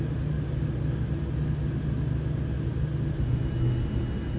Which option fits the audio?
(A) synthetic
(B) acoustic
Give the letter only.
B